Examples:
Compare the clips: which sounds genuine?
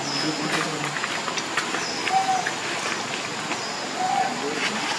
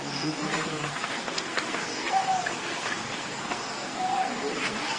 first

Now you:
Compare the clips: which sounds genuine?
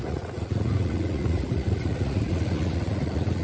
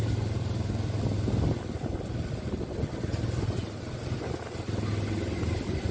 second